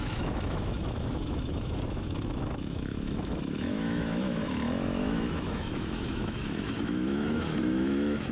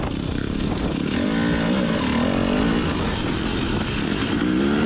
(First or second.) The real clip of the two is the second